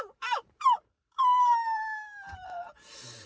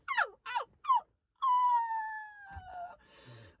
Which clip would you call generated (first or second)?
first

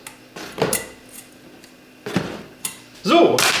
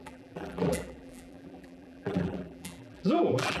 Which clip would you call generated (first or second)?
second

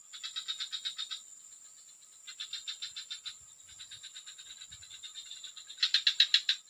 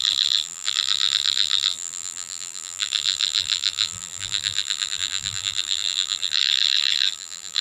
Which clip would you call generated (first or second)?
second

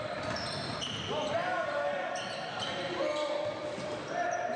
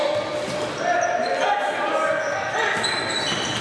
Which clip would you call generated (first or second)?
first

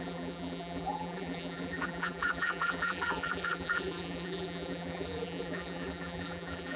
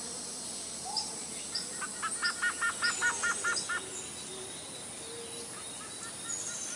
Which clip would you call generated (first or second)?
first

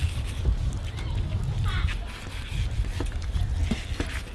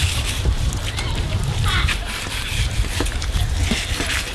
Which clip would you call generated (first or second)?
second